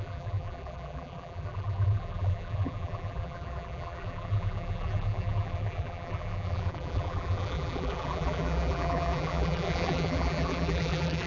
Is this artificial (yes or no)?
yes